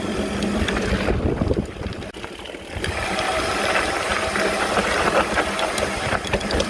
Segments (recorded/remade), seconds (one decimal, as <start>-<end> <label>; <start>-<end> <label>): 0.0-6.7 recorded